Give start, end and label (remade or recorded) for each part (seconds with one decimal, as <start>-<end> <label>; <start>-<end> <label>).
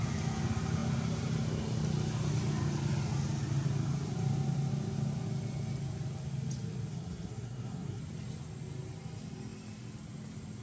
0.0-6.9 recorded; 6.9-8.0 remade; 8.0-10.6 recorded